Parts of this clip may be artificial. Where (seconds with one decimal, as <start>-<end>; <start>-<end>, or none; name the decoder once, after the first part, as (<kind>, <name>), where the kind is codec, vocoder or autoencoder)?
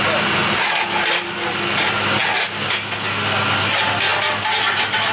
0.4-1.2 (vocoder, BigVGAN v2)